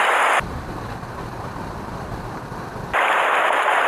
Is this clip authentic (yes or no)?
yes